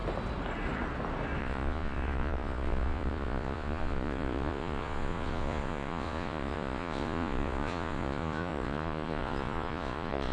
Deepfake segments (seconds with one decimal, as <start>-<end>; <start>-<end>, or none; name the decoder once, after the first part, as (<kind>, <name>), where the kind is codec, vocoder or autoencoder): 1.4-10.3 (vocoder, Vocos)